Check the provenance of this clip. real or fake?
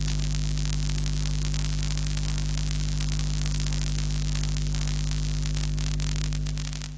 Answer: real